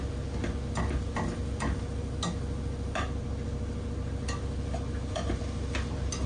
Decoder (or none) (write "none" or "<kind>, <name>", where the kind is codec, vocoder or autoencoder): none